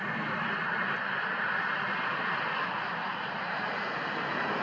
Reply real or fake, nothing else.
real